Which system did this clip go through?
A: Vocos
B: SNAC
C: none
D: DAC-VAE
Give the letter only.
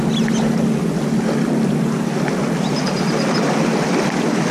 C